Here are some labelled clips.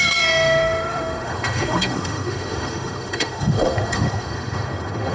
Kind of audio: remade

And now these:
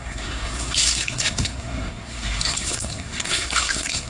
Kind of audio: remade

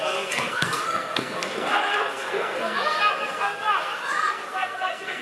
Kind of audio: remade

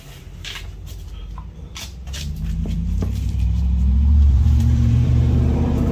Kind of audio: remade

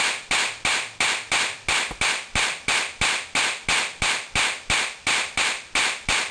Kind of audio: recorded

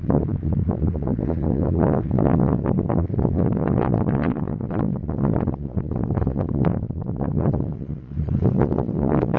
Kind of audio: remade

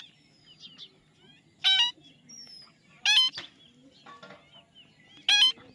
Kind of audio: recorded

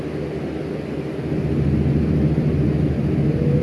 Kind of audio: recorded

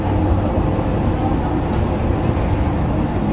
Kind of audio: recorded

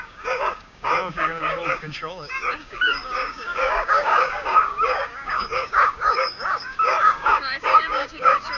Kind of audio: remade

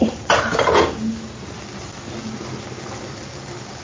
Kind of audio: recorded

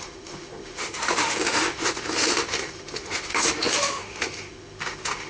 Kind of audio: remade